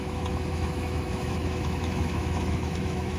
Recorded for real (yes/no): no